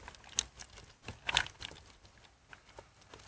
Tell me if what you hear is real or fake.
real